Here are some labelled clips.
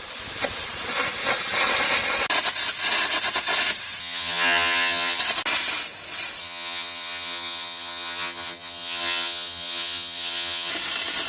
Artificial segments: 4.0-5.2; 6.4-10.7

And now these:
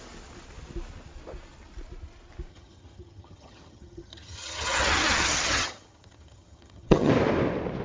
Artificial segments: 2.5-7.1